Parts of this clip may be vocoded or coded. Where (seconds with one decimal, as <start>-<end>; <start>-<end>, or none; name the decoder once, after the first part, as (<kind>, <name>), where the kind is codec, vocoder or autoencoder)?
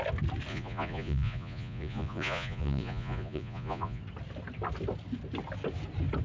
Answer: 0.5-4.0 (vocoder, Vocos)